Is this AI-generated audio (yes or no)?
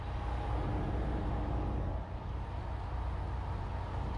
no